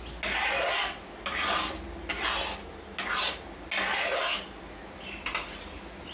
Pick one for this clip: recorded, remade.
recorded